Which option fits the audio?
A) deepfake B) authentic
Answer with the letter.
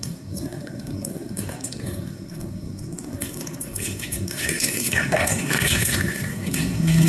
A